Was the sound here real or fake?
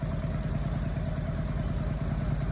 real